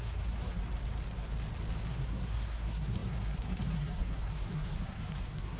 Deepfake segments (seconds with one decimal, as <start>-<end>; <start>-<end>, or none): 0.0-0.6; 1.9-5.6